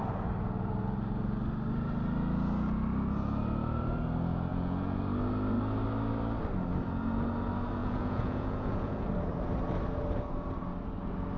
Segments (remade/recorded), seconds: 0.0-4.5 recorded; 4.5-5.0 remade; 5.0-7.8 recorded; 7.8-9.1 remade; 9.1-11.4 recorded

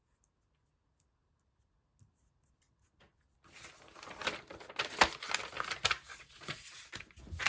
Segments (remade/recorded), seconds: 0.0-6.1 recorded; 6.1-6.9 remade; 6.9-7.5 recorded

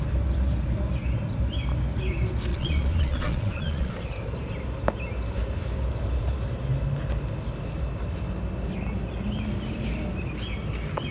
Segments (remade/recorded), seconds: 0.0-2.5 recorded; 2.5-3.9 remade; 3.9-11.1 recorded

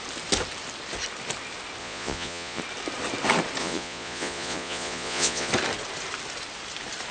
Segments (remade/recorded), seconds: 0.0-1.8 recorded; 1.8-2.6 remade; 2.6-3.6 recorded; 3.6-5.5 remade; 5.5-7.1 recorded